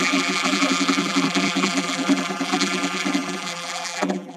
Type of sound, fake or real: fake